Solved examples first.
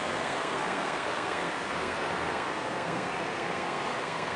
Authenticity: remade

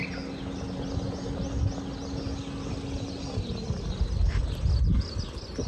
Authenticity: recorded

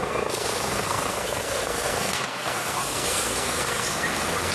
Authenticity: remade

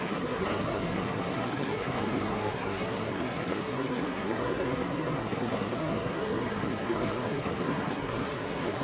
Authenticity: remade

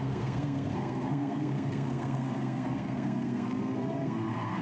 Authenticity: remade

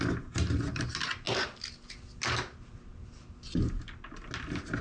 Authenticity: recorded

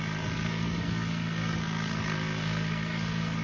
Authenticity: remade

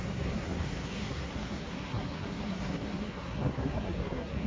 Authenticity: remade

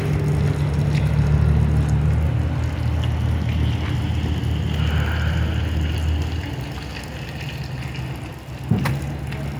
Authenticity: recorded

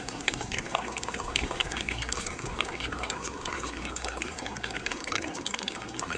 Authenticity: remade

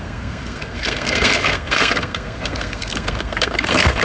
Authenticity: remade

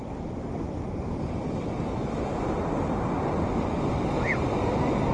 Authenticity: recorded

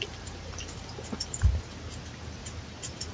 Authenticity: recorded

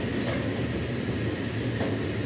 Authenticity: recorded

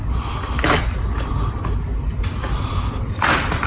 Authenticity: recorded